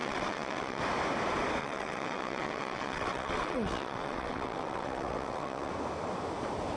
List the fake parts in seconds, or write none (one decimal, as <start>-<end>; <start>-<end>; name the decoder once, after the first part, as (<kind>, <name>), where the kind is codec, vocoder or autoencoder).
0.0-0.8 (vocoder, WaveNeXt); 1.6-5.7